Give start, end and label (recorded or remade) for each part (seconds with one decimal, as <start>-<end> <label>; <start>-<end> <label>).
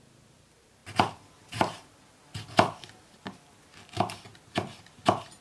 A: 0.0-5.4 recorded